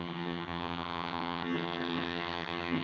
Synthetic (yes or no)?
yes